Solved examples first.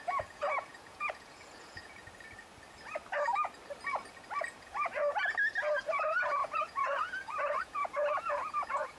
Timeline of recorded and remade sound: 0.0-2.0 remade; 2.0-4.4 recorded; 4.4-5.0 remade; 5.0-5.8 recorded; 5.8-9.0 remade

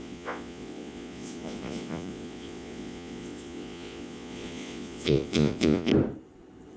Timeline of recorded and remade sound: 0.0-5.9 remade; 5.9-6.8 recorded

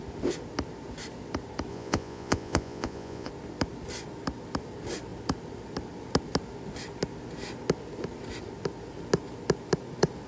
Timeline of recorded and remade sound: 0.0-1.7 recorded; 1.7-3.3 remade; 3.3-10.3 recorded

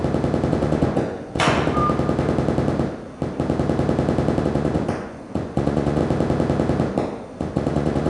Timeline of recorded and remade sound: 0.0-0.5 recorded; 0.5-1.8 remade; 1.8-4.4 recorded; 4.4-6.0 remade; 6.0-7.3 recorded; 7.3-8.1 remade

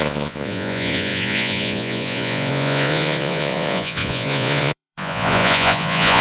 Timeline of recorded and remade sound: 0.0-6.2 remade

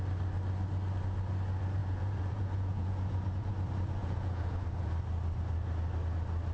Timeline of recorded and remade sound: 0.0-1.8 recorded; 1.8-3.5 remade; 3.5-4.0 recorded; 4.0-4.9 remade; 4.9-6.5 recorded

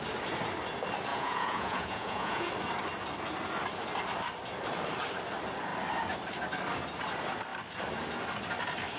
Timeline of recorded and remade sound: 0.0-1.1 recorded; 1.1-2.5 remade; 2.5-9.0 recorded